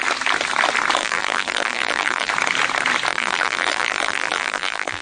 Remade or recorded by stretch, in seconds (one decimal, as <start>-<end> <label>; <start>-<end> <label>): 0.0-1.0 recorded; 1.0-2.3 remade; 2.3-3.1 recorded; 3.1-5.0 remade

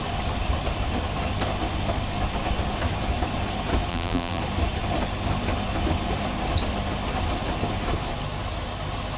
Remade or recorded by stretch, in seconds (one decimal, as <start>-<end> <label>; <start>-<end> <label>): 0.0-3.9 recorded; 3.9-4.4 remade; 4.4-9.2 recorded

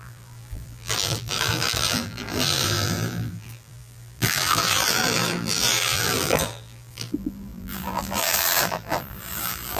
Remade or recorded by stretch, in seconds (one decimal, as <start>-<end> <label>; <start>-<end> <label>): 0.0-9.8 remade

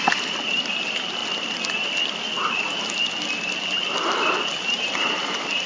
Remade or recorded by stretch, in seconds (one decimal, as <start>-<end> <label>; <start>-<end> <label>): 0.0-1.2 remade; 1.2-4.6 recorded; 4.6-5.7 remade

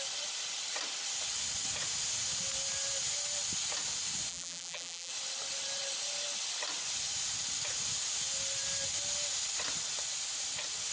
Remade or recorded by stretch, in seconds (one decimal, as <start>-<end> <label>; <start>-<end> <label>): 0.0-4.3 recorded; 4.3-5.1 remade; 5.1-10.9 recorded